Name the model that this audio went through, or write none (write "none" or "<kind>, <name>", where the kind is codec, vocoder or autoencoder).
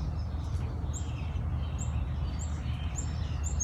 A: none